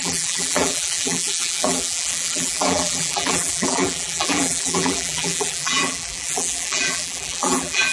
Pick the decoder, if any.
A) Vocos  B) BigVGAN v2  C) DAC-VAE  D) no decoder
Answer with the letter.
B